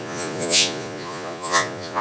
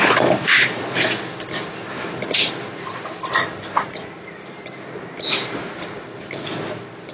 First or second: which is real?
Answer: second